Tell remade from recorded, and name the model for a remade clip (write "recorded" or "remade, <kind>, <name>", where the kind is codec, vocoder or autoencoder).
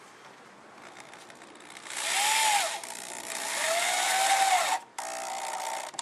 recorded